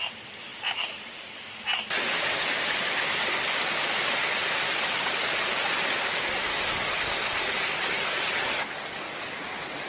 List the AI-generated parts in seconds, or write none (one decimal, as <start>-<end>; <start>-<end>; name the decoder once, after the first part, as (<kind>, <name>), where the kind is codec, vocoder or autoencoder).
6.5-9.3 (codec, DAC)